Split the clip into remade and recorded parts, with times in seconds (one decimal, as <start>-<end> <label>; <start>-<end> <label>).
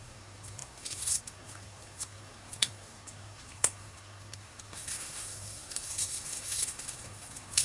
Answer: 0.0-7.6 remade